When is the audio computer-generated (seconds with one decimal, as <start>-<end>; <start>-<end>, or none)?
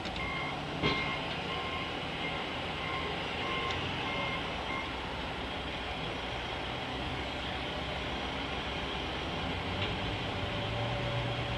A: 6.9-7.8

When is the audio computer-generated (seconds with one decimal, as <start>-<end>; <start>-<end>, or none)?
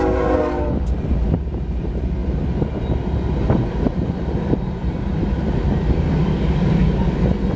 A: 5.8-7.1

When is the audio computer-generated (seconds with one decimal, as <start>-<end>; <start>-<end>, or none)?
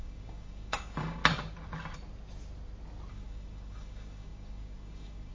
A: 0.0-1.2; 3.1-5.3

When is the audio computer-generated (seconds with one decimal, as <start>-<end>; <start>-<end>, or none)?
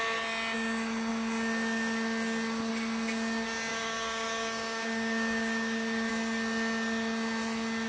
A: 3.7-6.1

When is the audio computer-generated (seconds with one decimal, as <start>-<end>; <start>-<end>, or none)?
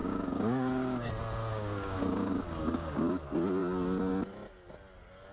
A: 0.0-1.1; 1.5-3.2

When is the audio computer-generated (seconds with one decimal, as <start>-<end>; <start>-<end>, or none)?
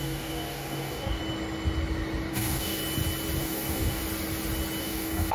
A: 0.0-1.2; 2.3-2.8; 3.4-4.0; 4.8-5.3